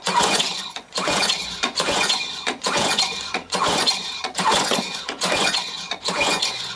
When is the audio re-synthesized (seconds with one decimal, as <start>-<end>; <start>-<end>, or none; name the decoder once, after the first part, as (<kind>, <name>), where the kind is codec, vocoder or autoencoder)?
0.0-6.8 (vocoder, Vocos)